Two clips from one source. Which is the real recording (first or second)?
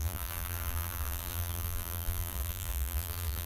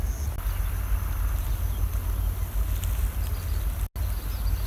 second